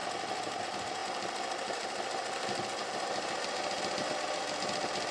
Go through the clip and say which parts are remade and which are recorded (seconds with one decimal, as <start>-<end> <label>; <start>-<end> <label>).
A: 0.0-5.1 recorded